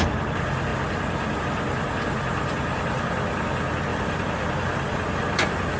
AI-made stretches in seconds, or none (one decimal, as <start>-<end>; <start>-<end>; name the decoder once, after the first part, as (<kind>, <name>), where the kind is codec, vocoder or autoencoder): 3.9-5.8 (vocoder, BigVGAN v2)